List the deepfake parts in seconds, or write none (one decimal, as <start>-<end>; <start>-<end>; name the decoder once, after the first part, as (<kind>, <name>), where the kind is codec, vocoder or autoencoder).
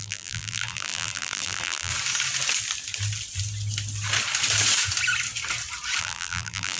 0.0-1.9 (vocoder, BigVGAN v2); 6.0-6.8